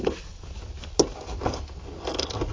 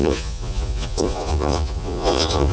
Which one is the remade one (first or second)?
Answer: second